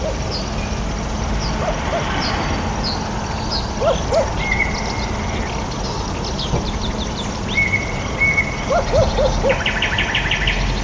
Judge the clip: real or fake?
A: real